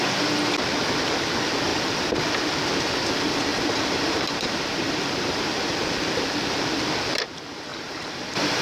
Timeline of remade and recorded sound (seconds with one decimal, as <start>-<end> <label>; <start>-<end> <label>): 0.0-3.5 recorded; 3.5-5.8 remade; 5.8-7.7 recorded; 7.7-8.6 remade